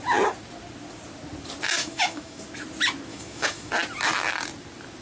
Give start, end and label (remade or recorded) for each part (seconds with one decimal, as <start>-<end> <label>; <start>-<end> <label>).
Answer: 0.0-1.8 recorded; 1.8-2.4 remade; 2.4-3.1 recorded; 3.1-3.7 remade; 3.7-5.0 recorded